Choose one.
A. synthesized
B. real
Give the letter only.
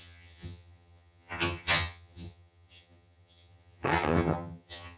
A